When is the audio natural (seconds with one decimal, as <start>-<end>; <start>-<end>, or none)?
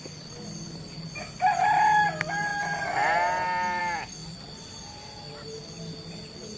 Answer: 0.0-6.6